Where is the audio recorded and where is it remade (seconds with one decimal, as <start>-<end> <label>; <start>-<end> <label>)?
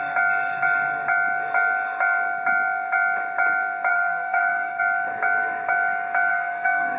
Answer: 0.0-3.9 recorded; 3.9-4.8 remade; 4.8-6.3 recorded; 6.3-7.0 remade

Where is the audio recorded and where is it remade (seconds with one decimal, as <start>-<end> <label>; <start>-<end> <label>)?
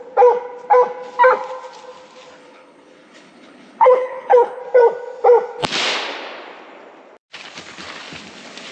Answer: 0.0-2.4 recorded; 2.4-4.6 remade; 4.6-8.7 recorded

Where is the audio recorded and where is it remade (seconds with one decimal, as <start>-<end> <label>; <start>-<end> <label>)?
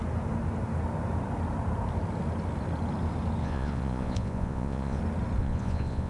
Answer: 0.0-3.4 recorded; 3.4-5.0 remade; 5.0-5.4 recorded; 5.4-6.1 remade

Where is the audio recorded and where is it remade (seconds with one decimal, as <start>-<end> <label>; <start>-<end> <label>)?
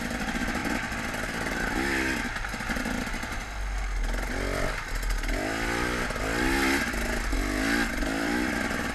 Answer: 0.0-0.6 remade; 0.6-2.6 recorded; 2.6-3.4 remade; 3.4-7.9 recorded; 7.9-8.9 remade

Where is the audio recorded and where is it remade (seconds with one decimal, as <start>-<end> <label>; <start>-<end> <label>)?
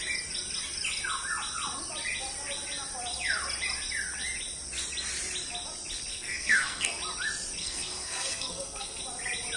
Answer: 0.0-6.1 recorded; 6.1-7.0 remade; 7.0-7.6 recorded; 7.6-9.0 remade; 9.0-9.6 recorded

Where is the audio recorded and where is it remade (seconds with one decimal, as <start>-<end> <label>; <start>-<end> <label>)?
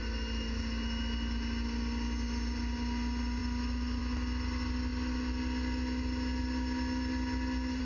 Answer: 0.0-7.8 recorded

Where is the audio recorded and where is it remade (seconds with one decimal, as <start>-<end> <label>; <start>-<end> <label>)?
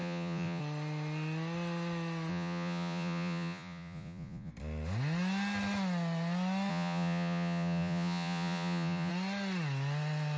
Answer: 0.0-0.6 remade; 0.6-2.3 recorded; 2.3-4.5 remade; 4.5-6.7 recorded; 6.7-9.1 remade; 9.1-10.4 recorded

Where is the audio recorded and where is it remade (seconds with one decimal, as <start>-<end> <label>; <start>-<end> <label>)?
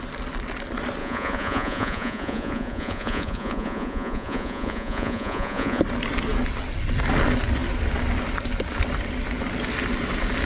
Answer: 0.0-1.0 recorded; 1.0-5.8 remade; 5.8-10.4 recorded